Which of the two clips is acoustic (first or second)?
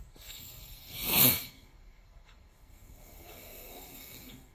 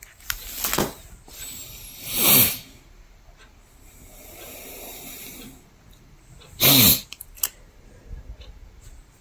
second